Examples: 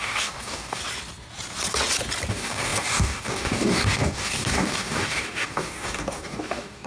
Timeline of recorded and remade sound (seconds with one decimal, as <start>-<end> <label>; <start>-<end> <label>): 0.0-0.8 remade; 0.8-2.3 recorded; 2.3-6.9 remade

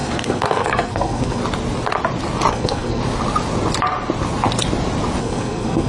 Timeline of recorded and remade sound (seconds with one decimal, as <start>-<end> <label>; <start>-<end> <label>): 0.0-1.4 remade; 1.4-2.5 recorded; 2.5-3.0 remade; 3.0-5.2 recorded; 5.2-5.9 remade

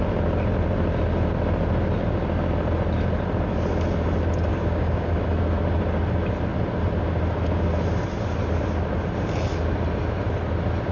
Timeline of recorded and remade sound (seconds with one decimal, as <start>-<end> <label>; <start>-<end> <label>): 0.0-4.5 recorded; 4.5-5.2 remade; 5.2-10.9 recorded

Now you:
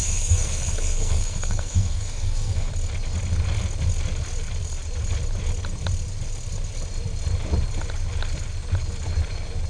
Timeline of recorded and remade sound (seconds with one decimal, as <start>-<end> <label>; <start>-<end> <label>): 0.0-2.7 remade; 2.7-9.7 recorded